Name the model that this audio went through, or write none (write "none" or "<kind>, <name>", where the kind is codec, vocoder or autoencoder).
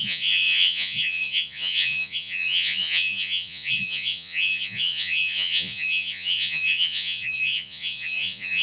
vocoder, Vocos